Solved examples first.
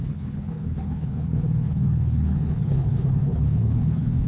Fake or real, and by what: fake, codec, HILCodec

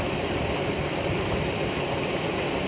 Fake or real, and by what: real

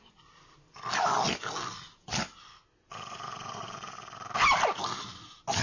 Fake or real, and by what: real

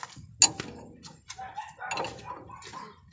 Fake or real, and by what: real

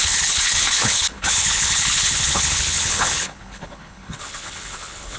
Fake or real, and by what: fake, codec, HILCodec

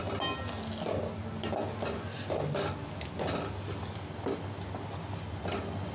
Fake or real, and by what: real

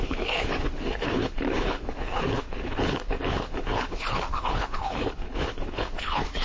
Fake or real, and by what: fake, codec, HILCodec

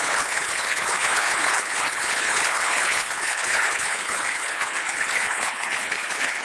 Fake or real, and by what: fake, codec, HILCodec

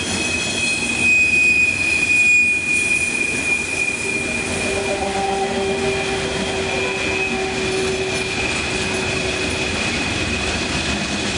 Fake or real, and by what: real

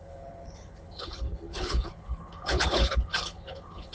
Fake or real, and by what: fake, codec, HILCodec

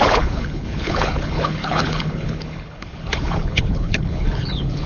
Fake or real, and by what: fake, codec, HILCodec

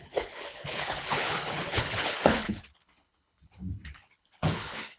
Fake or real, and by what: fake, codec, HILCodec